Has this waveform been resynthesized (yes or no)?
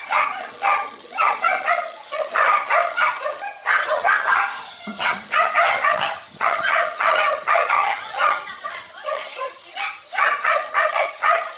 yes